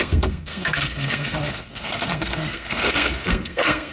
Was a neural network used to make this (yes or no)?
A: yes